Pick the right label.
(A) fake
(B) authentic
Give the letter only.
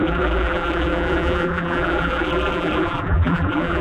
A